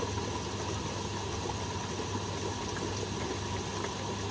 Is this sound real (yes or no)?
yes